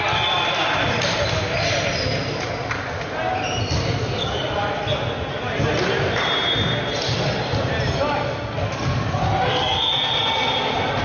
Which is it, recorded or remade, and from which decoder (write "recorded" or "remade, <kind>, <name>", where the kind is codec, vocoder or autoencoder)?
recorded